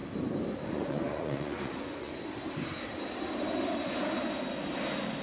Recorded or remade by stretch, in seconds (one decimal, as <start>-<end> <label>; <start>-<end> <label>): 0.0-0.7 recorded; 0.7-2.1 remade; 2.1-5.2 recorded